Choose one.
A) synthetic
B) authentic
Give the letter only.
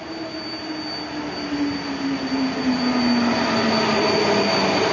B